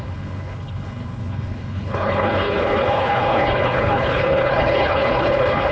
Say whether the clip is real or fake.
fake